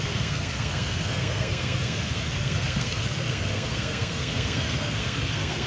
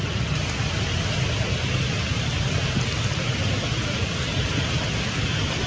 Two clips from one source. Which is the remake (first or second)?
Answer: first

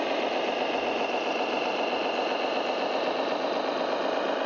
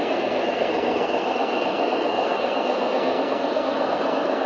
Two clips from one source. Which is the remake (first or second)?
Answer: second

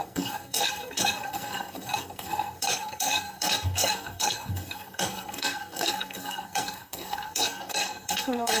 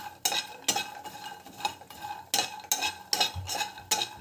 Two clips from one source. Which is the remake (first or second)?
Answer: first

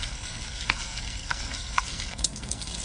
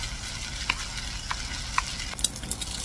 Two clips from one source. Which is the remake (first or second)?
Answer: first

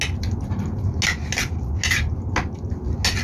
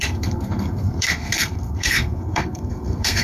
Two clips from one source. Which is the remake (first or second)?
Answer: second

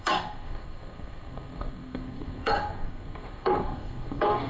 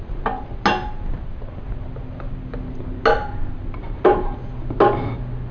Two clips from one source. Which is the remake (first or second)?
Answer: first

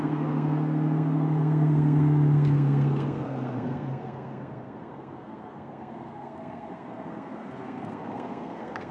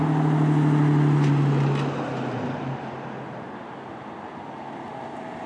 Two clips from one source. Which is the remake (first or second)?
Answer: first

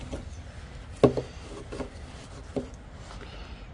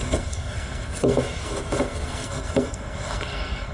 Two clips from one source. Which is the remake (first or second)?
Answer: second